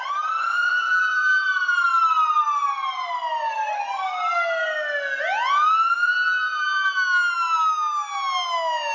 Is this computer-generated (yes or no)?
no